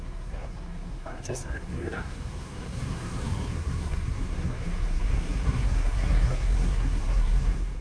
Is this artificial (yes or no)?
yes